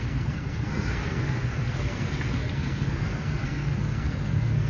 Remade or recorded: remade